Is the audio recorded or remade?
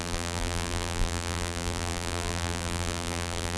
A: remade